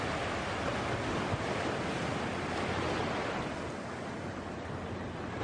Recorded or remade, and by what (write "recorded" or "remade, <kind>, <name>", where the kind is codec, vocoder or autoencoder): recorded